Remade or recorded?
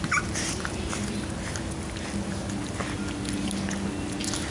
recorded